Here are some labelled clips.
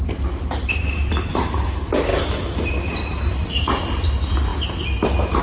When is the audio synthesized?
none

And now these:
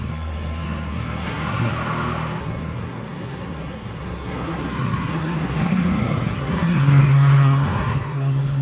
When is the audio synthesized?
0.0-1.7; 2.4-8.6

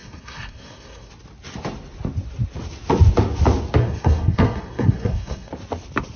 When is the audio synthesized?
0.0-1.1; 3.8-5.5